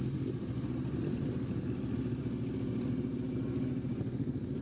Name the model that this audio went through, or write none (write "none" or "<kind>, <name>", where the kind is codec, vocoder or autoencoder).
none